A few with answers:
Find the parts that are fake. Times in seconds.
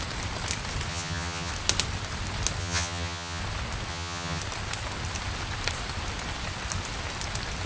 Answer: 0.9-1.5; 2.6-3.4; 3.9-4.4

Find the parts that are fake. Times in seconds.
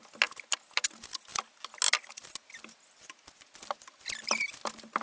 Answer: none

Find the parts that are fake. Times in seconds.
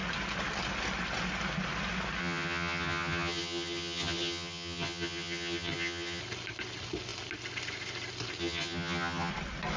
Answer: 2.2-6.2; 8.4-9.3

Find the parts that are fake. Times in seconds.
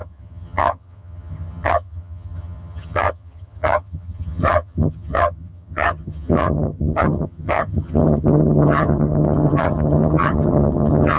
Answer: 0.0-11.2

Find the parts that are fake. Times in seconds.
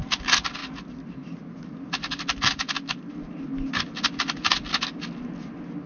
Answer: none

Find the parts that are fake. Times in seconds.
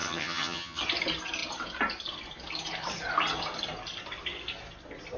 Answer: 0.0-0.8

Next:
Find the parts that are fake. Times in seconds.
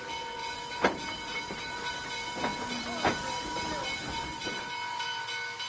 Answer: none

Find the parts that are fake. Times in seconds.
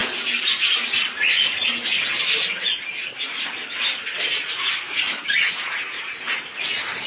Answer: none